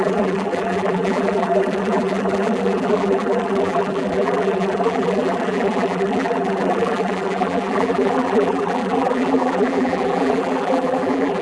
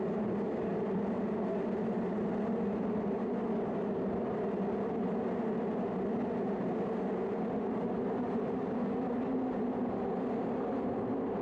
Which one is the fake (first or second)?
first